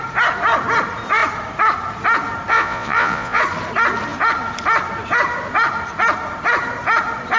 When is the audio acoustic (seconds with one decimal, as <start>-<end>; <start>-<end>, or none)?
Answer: 0.0-2.5; 3.4-7.4